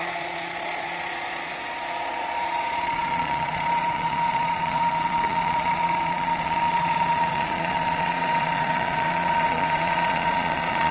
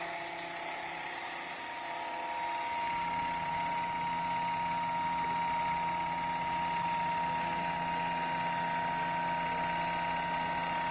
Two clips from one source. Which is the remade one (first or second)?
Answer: first